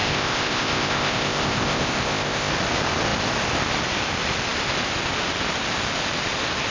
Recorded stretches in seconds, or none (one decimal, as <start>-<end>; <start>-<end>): 2.5-6.7